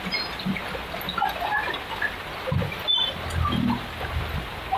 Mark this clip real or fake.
real